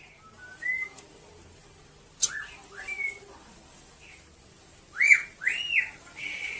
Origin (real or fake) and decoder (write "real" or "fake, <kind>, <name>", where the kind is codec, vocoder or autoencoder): real